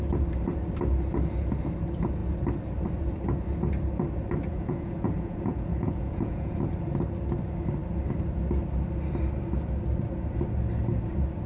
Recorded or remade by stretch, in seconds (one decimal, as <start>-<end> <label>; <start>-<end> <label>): 0.0-4.5 recorded; 4.5-6.7 remade; 6.7-11.5 recorded